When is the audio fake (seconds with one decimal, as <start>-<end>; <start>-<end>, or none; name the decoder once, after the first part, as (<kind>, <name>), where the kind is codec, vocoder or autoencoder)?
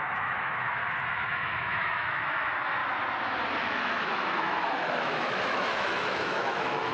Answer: 0.0-0.8 (autoencoder, DAC-VAE); 1.3-2.8; 3.6-6.9